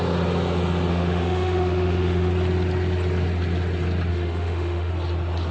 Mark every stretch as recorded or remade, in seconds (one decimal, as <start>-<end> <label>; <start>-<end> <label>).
0.0-0.9 recorded; 0.9-2.3 remade; 2.3-4.1 recorded; 4.1-4.9 remade; 4.9-5.5 recorded